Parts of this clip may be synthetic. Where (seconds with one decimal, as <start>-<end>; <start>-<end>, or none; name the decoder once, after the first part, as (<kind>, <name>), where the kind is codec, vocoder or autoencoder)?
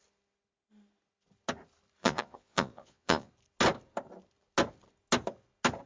2.0-3.3 (vocoder, Vocos)